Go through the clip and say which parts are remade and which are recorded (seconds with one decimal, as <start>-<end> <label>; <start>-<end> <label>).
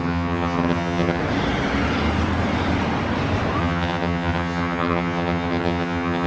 0.0-1.2 remade; 1.2-3.6 recorded; 3.6-6.3 remade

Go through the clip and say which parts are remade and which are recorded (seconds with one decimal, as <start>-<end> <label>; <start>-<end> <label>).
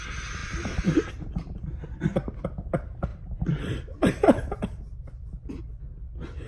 0.0-0.4 recorded; 0.4-1.1 remade; 1.1-3.1 recorded; 3.1-5.6 remade; 5.6-6.5 recorded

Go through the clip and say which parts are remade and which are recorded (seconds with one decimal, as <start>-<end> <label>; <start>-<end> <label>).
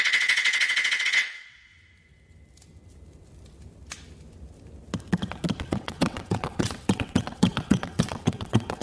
0.0-1.7 remade; 1.7-5.6 recorded; 5.6-8.8 remade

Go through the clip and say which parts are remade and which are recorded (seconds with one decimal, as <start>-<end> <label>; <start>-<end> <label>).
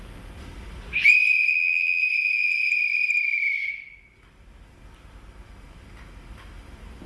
0.0-1.5 recorded; 1.5-2.0 remade; 2.0-7.1 recorded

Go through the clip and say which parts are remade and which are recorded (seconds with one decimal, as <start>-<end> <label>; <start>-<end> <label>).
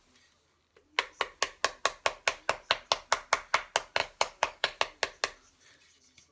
0.0-4.0 recorded; 4.0-4.8 remade; 4.8-6.3 recorded